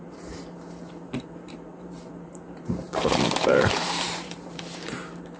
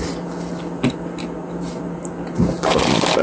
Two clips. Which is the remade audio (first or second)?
first